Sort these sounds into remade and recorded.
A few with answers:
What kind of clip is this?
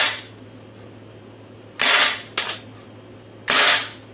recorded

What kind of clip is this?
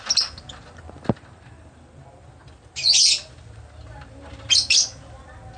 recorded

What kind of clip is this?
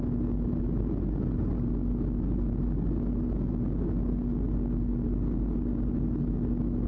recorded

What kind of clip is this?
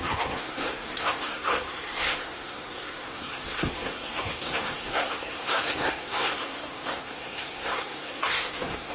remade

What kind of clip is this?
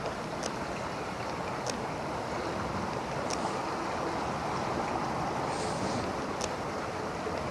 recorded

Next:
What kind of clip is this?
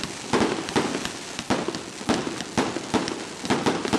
recorded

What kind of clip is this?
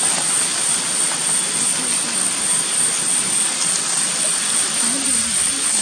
recorded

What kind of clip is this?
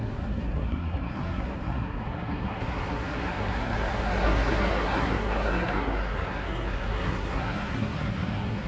remade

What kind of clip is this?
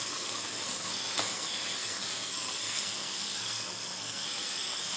remade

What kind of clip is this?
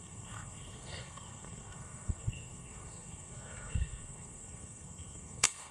remade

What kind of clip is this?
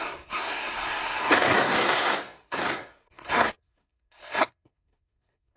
remade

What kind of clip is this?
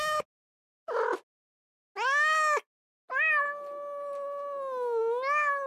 recorded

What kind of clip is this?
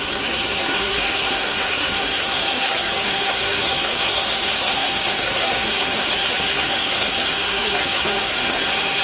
remade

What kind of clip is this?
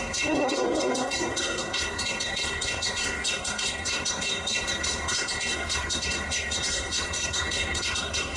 remade